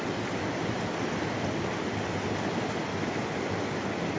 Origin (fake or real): real